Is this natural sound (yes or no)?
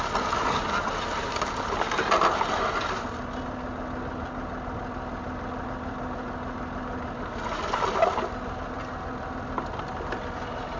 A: yes